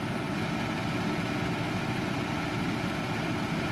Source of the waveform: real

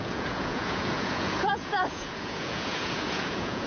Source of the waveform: fake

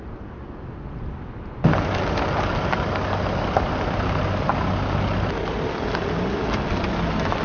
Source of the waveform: real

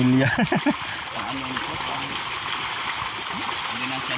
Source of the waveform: real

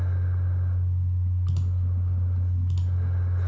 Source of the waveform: real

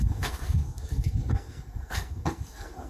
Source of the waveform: fake